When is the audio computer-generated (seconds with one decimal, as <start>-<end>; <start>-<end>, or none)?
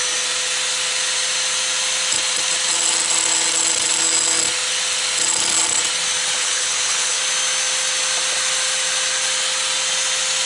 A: 6.4-7.2